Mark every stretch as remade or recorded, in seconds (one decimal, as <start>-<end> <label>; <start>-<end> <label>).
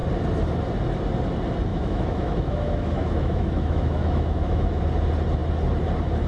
0.0-1.7 recorded; 1.7-4.8 remade; 4.8-6.3 recorded